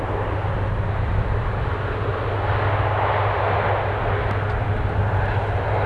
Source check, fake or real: real